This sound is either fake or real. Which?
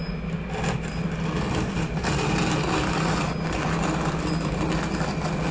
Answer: real